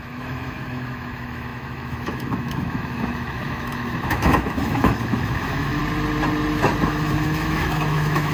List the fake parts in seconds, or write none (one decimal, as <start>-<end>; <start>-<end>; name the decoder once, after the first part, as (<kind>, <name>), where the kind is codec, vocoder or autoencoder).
0.0-5.8 (autoencoder, DAC-VAE); 6.8-8.3